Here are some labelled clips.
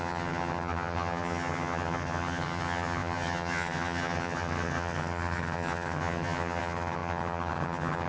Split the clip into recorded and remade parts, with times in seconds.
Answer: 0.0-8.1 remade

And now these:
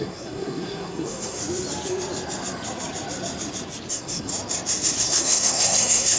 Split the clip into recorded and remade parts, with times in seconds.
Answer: 0.0-1.4 remade; 1.4-3.9 recorded; 3.9-4.3 remade; 4.3-5.0 recorded; 5.0-6.2 remade

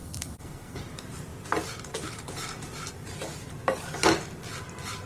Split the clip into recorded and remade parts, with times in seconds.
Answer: 0.0-0.8 remade; 0.8-5.1 recorded